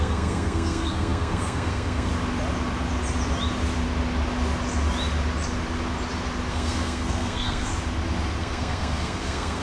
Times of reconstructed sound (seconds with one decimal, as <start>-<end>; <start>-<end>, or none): 0.0-2.1; 6.5-7.7; 8.4-9.6